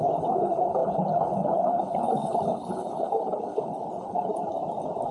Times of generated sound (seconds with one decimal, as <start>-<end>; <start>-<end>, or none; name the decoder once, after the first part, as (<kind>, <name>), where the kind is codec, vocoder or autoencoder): 0.0-4.3 (codec, HILCodec)